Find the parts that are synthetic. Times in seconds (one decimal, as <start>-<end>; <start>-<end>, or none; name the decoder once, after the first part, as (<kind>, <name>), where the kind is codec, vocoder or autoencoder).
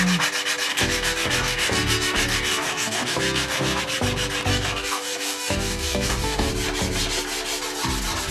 0.7-3.8 (codec, DAC); 4.5-6.5